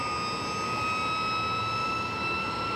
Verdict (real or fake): real